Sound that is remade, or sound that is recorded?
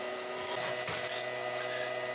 recorded